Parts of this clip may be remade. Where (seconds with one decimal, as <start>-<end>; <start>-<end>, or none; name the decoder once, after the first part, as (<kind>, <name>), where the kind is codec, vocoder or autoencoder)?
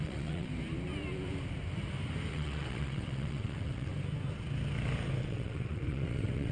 0.0-0.5 (vocoder, WaveNeXt); 2.3-3.9; 5.2-6.5